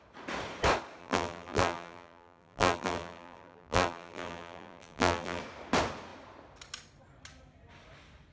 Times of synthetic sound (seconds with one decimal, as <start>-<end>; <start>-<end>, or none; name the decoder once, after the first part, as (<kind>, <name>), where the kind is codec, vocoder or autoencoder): 1.0-5.4 (vocoder, BigVGAN v2)